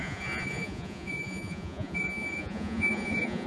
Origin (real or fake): fake